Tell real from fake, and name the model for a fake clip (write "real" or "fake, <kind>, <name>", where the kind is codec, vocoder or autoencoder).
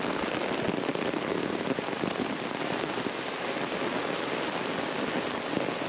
real